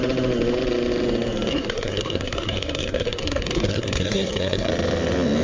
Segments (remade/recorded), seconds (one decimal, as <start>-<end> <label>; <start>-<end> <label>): 0.0-1.5 recorded; 1.5-4.7 remade; 4.7-5.4 recorded